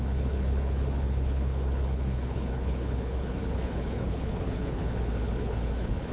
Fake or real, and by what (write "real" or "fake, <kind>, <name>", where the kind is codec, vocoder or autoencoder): fake, codec, HILCodec